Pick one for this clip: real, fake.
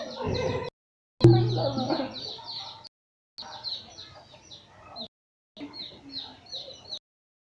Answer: real